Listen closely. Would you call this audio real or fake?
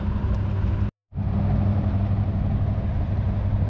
real